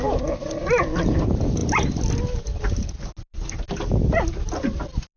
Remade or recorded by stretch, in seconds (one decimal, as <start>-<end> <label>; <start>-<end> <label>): 0.0-5.2 recorded